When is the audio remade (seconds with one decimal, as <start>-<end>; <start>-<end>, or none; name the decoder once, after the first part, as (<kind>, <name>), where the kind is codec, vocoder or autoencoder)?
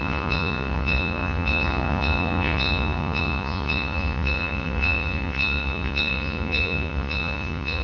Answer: 0.0-7.8 (vocoder, Vocos)